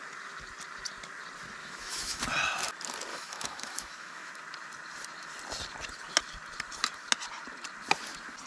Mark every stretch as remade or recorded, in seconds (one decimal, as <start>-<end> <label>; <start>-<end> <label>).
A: 0.0-1.6 recorded; 1.6-2.2 remade; 2.2-3.1 recorded; 3.1-4.3 remade; 4.3-8.5 recorded